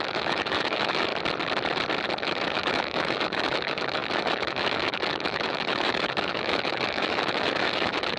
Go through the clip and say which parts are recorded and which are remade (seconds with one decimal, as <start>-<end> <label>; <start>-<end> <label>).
0.0-1.1 remade; 1.1-2.2 recorded; 2.2-8.2 remade